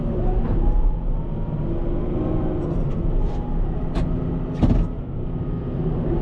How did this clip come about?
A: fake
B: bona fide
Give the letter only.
B